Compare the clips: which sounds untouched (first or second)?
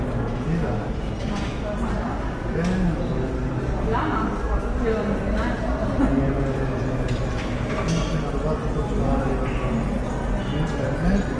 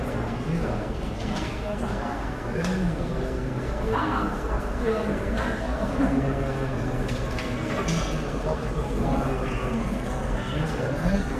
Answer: first